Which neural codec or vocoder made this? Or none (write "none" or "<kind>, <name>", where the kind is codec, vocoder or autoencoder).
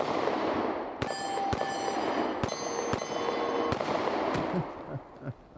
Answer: none